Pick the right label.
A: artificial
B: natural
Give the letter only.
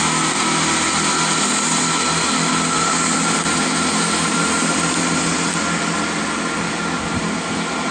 B